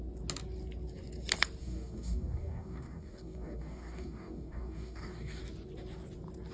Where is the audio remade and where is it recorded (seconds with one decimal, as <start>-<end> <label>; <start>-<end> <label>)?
0.0-1.6 recorded; 1.6-5.4 remade; 5.4-6.5 recorded